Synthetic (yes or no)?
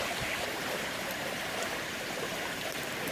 yes